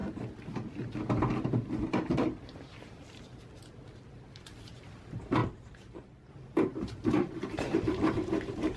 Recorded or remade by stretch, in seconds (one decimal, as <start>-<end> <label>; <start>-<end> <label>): 0.0-4.6 recorded; 4.6-8.8 remade